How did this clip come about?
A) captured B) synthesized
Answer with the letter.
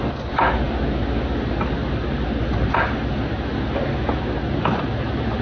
A